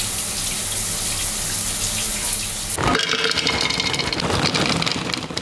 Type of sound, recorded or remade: recorded